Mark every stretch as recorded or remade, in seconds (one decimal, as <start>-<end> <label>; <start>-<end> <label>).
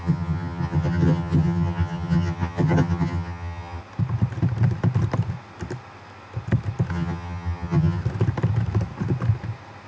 0.0-3.8 remade; 3.8-6.9 recorded; 6.9-8.0 remade; 8.0-9.9 recorded